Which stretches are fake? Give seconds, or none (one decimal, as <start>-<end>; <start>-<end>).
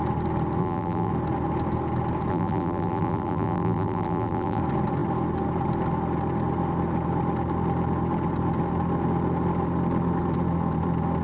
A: 0.6-1.1; 2.3-4.6